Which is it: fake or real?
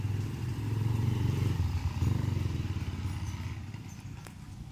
real